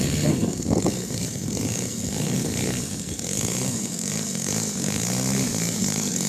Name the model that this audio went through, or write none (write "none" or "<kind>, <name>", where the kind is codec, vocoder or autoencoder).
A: codec, SNAC